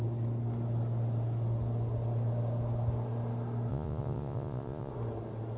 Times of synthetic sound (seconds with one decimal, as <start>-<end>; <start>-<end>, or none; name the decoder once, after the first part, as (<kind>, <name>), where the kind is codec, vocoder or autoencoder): 3.7-4.9 (vocoder, Vocos)